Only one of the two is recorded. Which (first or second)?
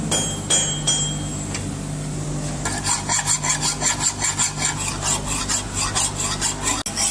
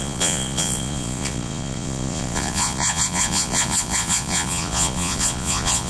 first